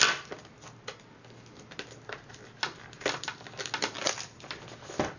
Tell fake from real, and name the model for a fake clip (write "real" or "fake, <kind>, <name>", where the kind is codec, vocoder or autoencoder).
real